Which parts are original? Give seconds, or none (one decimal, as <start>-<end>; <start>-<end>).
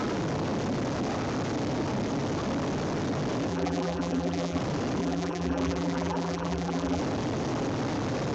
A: 0.0-3.5; 4.6-5.0; 7.0-8.3